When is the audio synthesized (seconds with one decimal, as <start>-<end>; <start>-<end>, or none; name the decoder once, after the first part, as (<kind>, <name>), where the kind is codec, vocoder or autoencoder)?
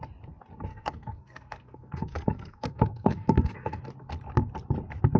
0.7-3.8 (codec, SNAC)